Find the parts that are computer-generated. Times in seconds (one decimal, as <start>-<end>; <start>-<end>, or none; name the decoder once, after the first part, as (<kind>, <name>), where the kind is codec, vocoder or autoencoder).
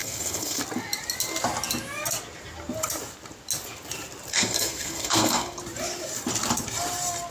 0.0-0.6 (codec, SNAC); 4.3-5.6